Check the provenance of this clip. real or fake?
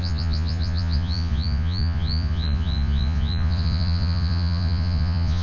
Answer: fake